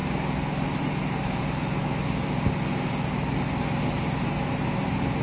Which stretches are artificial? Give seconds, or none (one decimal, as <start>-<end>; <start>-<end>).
none